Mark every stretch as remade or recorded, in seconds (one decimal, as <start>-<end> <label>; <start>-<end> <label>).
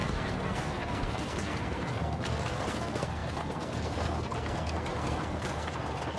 0.0-6.2 remade